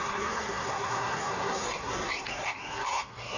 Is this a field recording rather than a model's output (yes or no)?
no